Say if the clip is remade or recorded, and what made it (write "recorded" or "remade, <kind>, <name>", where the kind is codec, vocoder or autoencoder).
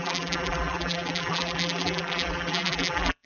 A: remade, vocoder, BigVGAN v2